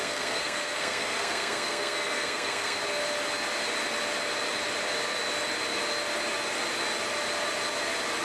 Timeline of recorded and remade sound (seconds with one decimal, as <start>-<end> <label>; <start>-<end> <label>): 0.0-2.8 remade; 2.8-8.2 recorded